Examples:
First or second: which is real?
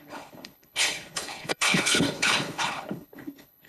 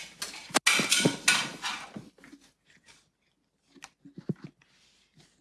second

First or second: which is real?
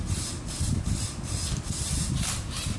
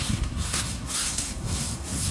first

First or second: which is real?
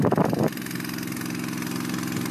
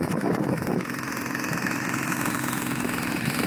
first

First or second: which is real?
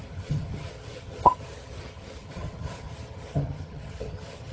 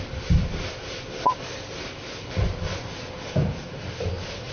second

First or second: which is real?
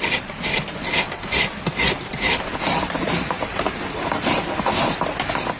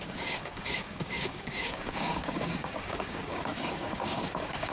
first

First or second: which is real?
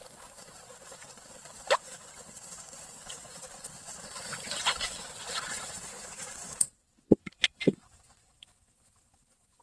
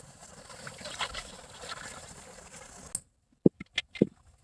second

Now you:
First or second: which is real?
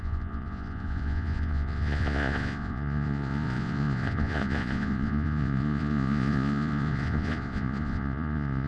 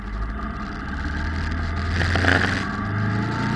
second